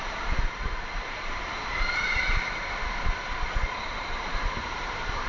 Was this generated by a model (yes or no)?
yes